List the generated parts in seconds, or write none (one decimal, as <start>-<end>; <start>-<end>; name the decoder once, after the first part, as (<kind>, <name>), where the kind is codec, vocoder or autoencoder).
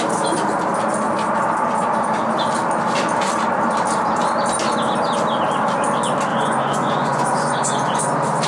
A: 6.3-8.0 (vocoder, Vocos)